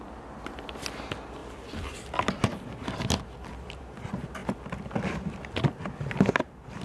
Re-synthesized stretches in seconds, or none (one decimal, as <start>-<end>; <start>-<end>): none